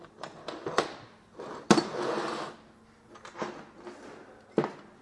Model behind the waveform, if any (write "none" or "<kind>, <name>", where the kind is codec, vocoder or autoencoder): none